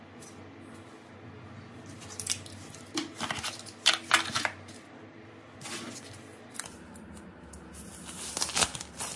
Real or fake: real